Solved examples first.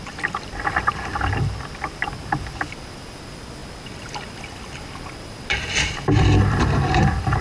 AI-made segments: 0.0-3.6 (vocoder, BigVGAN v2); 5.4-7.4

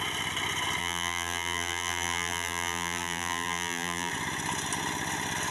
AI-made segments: 0.8-4.1 (vocoder, BigVGAN v2)

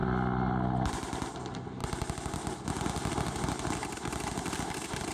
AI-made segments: none

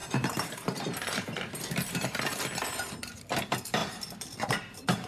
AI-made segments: 0.0-2.4 (vocoder, BigVGAN v2); 3.8-5.1

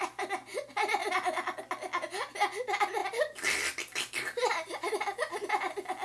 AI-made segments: 3.0-4.5 (vocoder, BigVGAN v2)